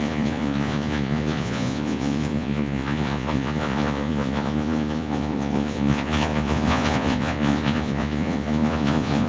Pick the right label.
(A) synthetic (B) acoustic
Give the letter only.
A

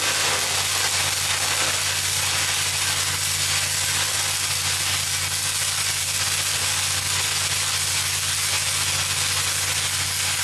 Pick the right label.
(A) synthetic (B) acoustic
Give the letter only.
B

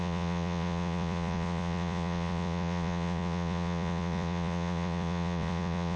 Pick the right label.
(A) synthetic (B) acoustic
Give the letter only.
A